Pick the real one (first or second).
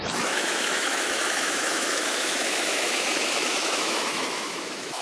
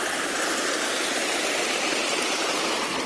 second